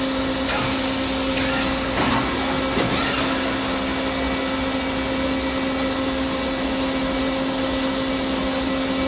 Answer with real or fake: real